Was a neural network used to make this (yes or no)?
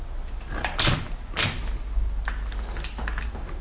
no